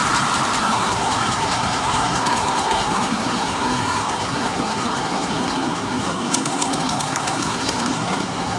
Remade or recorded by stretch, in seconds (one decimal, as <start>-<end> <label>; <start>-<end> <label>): 0.0-0.6 recorded; 0.6-8.6 remade